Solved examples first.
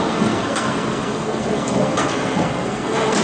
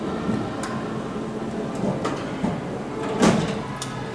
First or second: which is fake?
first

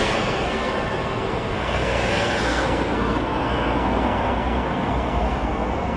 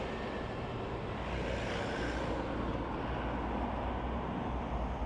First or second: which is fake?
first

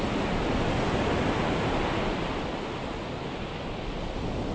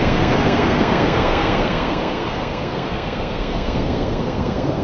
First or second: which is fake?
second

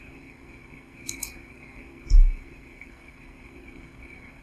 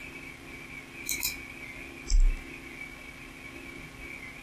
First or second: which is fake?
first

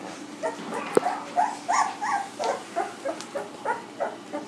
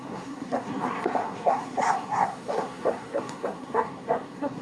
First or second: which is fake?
second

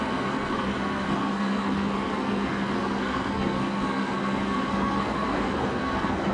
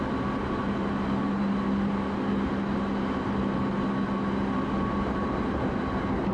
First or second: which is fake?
first